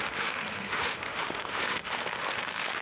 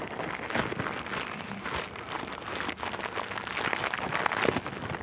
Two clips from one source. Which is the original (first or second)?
second